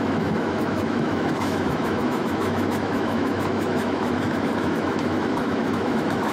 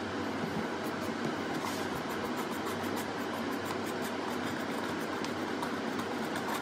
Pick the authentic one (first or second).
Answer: second